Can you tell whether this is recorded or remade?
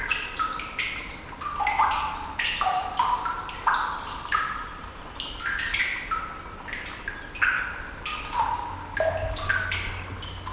recorded